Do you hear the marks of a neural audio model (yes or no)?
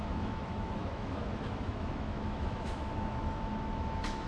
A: yes